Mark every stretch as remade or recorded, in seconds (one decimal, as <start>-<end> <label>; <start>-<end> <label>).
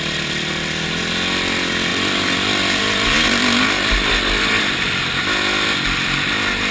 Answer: 0.0-1.9 recorded; 1.9-3.4 remade; 3.4-6.7 recorded